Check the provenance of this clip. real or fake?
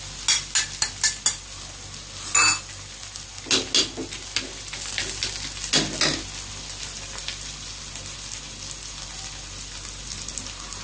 real